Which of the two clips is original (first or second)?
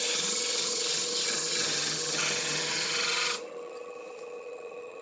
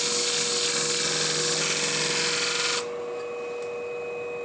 second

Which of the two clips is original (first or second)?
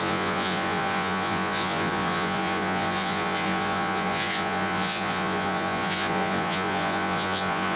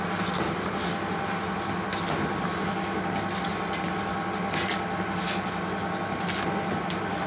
second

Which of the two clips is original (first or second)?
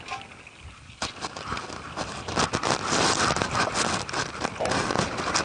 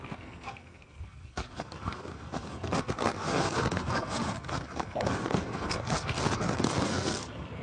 first